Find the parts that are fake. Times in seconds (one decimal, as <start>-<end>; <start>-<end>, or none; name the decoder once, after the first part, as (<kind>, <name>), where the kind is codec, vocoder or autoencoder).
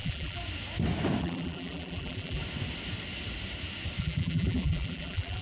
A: 0.0-0.4 (vocoder, BigVGAN v2); 1.2-2.4; 4.0-5.4